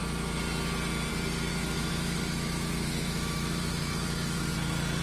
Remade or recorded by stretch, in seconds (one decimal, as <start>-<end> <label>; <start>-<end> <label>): 0.0-1.5 recorded; 1.5-4.5 remade; 4.5-5.0 recorded